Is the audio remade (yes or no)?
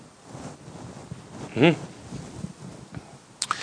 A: no